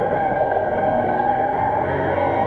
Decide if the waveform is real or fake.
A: fake